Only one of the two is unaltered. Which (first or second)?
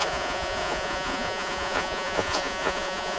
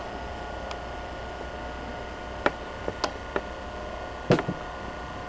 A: second